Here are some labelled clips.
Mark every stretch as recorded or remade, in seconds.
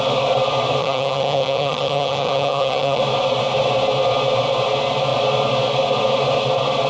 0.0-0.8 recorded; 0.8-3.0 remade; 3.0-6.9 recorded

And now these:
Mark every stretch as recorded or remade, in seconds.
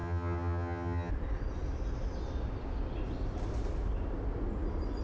0.0-1.1 remade; 1.1-5.0 recorded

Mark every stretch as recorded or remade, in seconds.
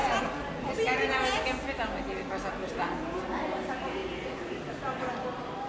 0.0-5.7 recorded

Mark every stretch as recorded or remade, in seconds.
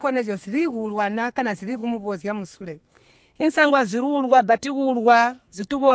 0.0-5.9 remade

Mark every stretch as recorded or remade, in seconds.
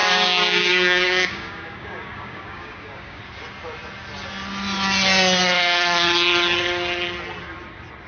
0.0-3.2 remade; 3.2-8.1 recorded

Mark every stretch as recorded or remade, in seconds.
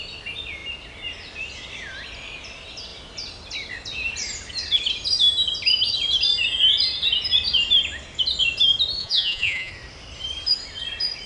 0.0-9.0 recorded; 9.0-9.7 remade; 9.7-11.3 recorded